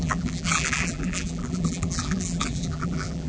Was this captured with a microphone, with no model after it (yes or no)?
no